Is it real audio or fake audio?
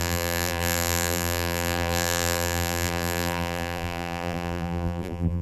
fake